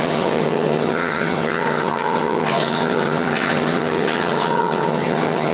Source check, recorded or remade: remade